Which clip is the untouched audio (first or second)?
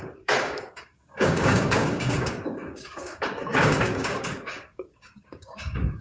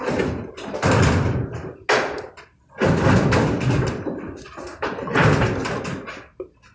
second